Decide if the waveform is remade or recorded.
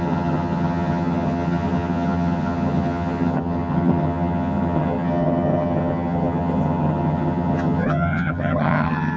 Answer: remade